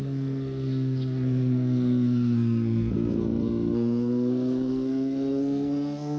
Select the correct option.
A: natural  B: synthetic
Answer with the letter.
B